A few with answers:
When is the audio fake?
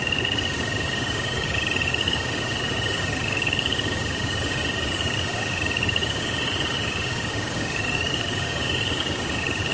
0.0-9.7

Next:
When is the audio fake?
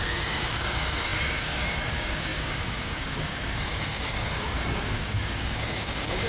0.0-6.3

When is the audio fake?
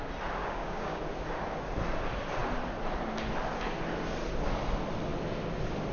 0.4-1.0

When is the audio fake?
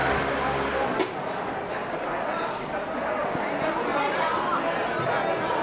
none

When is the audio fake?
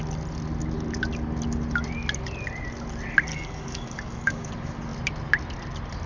3.3-4.5